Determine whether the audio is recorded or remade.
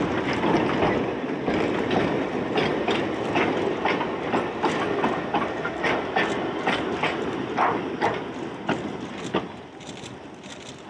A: recorded